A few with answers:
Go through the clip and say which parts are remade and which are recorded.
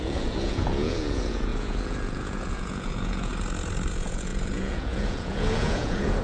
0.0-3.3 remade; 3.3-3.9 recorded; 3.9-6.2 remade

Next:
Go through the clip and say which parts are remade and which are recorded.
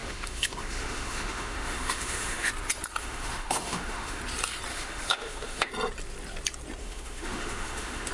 0.0-2.5 remade; 2.5-3.0 recorded; 3.0-4.2 remade; 4.2-4.7 recorded; 4.7-5.7 remade; 5.7-6.8 recorded; 6.8-8.1 remade